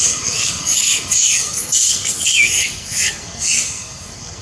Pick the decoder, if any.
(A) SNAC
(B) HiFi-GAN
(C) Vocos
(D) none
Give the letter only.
A